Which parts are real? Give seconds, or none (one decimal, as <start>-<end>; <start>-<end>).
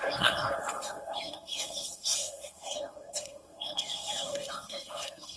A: none